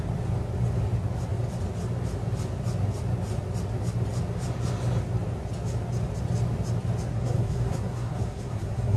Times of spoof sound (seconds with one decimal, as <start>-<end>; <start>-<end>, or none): 7.1-9.0